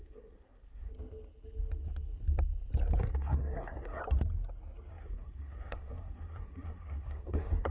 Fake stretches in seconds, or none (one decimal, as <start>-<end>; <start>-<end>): 0.0-0.9; 3.0-4.0; 4.9-7.7